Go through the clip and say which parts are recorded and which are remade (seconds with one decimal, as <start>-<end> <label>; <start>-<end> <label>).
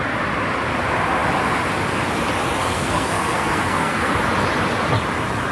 0.0-2.6 recorded; 2.6-4.1 remade; 4.1-5.5 recorded